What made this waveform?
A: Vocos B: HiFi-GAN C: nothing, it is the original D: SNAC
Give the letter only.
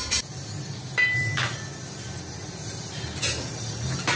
C